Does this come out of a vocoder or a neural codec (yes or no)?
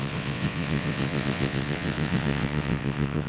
yes